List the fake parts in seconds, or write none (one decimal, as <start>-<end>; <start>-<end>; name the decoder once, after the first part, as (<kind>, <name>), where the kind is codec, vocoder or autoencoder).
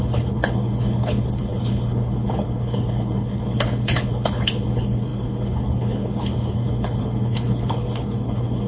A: 0.0-8.7 (codec, HILCodec)